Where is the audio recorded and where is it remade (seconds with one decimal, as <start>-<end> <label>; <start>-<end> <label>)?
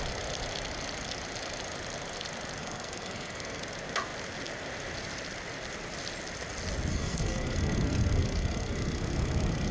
0.0-2.6 recorded; 2.6-3.6 remade; 3.6-6.9 recorded; 6.9-9.7 remade